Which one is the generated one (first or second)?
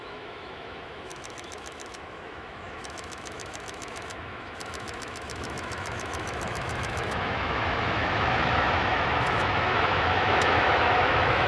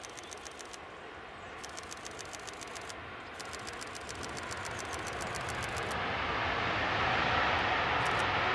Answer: first